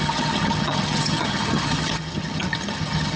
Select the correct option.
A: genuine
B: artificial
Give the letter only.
B